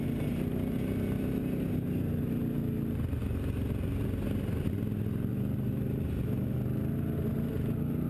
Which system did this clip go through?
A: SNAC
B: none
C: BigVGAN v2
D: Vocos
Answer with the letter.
B